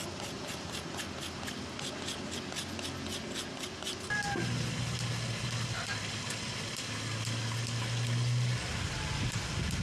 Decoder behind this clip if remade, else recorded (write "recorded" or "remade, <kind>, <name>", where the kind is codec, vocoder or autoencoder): recorded